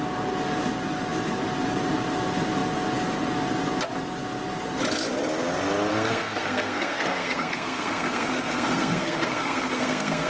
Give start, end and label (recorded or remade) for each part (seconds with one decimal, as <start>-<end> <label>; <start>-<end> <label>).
0.0-5.9 recorded; 5.9-10.3 remade